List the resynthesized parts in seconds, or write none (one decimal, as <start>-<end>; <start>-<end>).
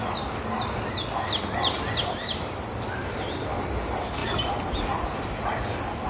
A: none